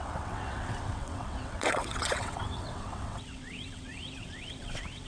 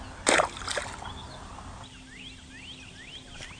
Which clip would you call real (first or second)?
second